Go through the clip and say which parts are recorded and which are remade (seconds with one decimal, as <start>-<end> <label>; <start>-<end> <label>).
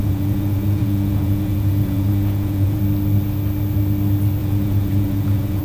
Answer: 0.0-2.8 remade; 2.8-4.4 recorded; 4.4-5.6 remade